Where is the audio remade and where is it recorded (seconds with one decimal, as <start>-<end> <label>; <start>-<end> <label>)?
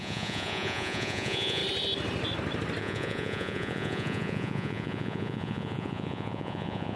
0.0-1.6 remade; 1.6-2.8 recorded; 2.8-7.0 remade